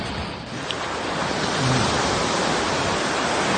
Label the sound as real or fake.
real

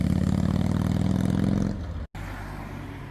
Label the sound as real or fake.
real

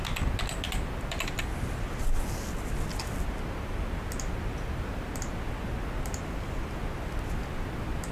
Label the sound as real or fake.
real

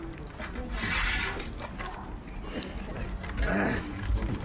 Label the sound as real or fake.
real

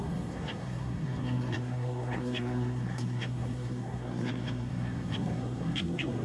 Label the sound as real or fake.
fake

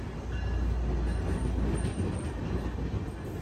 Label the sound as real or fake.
real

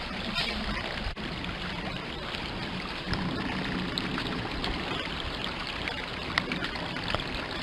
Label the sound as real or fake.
real